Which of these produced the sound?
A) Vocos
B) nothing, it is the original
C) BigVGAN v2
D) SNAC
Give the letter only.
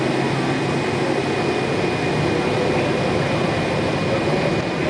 B